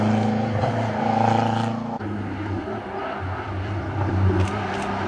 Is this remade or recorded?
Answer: recorded